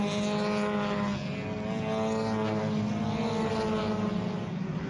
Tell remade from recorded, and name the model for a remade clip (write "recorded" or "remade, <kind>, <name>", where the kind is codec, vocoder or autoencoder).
recorded